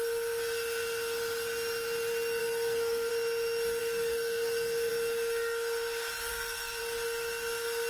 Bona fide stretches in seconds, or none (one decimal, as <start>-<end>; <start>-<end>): 0.0-2.4; 3.1-3.8; 4.9-6.3; 6.8-7.9